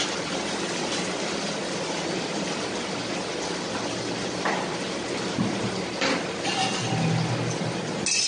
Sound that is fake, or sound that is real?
real